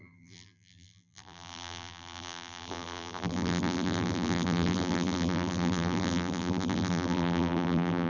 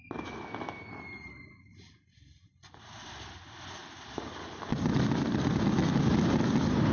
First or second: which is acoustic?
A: second